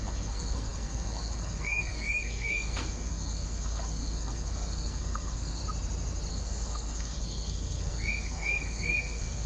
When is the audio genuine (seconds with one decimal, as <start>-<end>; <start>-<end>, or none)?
5.6-6.3